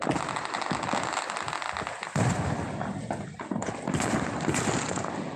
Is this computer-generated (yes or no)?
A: no